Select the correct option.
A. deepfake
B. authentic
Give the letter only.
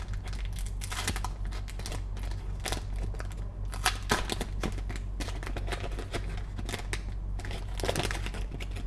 B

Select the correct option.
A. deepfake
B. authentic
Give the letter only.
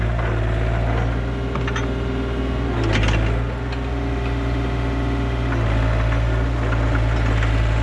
B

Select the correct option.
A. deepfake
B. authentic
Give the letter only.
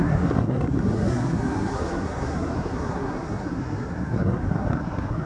A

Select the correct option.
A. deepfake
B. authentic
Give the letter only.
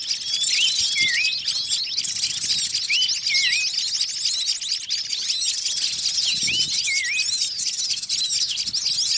B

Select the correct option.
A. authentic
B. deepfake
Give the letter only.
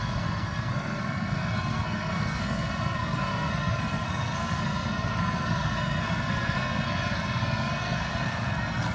B